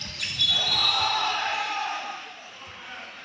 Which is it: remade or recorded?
remade